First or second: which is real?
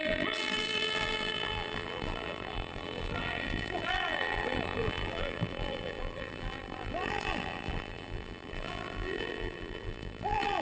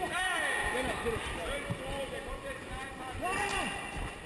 second